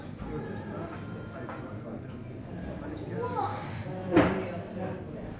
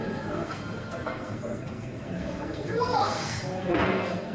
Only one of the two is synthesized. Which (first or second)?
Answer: second